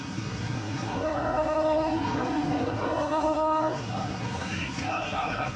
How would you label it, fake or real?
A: fake